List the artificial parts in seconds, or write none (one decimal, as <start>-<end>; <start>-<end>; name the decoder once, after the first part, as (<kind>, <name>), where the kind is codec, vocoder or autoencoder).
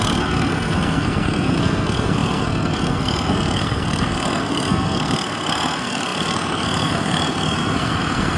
0.0-8.4 (codec, SNAC)